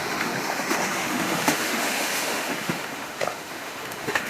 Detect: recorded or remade remade